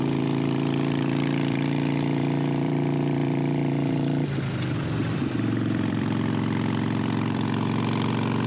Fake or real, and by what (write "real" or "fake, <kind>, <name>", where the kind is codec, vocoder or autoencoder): fake, vocoder, BigVGAN v2